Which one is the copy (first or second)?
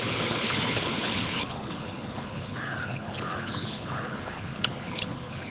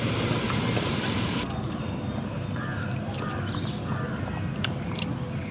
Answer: first